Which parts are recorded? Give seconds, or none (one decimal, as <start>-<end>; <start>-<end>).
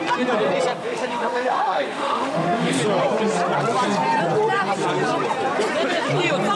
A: 0.0-0.8; 2.8-6.6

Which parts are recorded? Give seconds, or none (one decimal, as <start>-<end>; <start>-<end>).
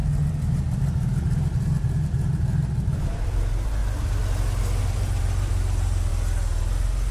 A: 3.8-4.8; 6.1-7.1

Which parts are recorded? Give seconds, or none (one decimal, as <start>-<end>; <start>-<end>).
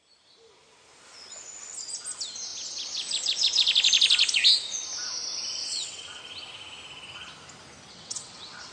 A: 0.0-5.6; 6.2-7.9